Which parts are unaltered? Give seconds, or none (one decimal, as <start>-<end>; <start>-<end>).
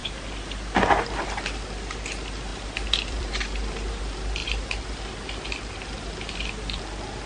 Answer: 1.9-2.5; 4.0-4.4; 5.0-7.3